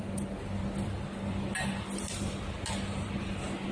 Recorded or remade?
recorded